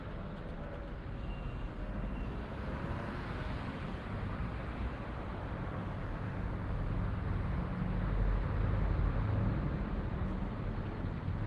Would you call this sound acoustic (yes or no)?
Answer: yes